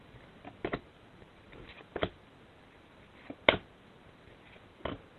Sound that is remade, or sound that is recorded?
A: remade